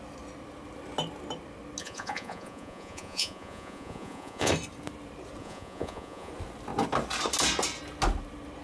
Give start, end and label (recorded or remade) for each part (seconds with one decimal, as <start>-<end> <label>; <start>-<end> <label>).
0.0-1.8 recorded; 1.8-4.5 remade; 4.5-5.4 recorded; 5.4-6.3 remade; 6.3-8.6 recorded

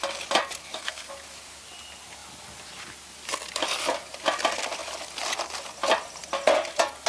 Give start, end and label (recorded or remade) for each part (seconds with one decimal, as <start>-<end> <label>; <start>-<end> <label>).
0.0-0.6 recorded; 0.6-1.1 remade; 1.1-7.1 recorded

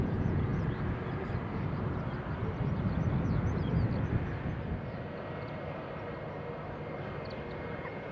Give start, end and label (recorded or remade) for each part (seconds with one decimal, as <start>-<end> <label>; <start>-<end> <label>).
0.0-0.5 remade; 0.5-3.3 recorded; 3.3-3.7 remade; 3.7-7.5 recorded; 7.5-8.1 remade

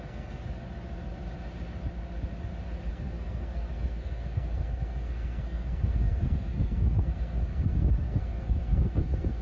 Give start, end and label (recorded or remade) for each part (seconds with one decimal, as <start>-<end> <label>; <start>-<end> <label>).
0.0-0.4 remade; 0.4-2.9 recorded; 2.9-9.4 remade

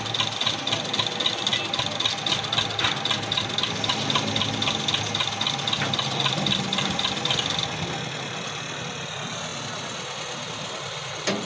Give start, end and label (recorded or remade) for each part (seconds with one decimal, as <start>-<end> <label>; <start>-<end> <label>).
0.0-11.5 recorded

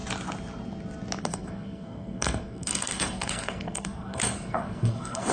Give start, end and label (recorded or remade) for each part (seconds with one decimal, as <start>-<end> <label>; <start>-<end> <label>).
0.0-1.2 recorded; 1.2-5.3 remade